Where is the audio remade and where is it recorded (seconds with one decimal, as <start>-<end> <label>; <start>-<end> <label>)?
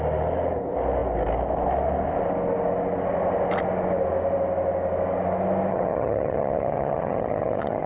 0.0-5.7 recorded; 5.7-7.9 remade